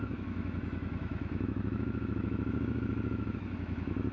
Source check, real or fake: fake